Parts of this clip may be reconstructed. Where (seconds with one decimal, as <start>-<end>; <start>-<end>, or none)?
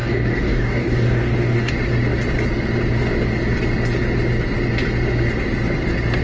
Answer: 0.0-1.7